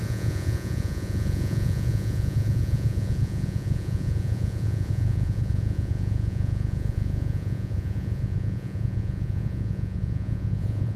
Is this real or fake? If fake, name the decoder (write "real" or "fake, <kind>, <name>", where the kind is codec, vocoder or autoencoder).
fake, vocoder, Vocos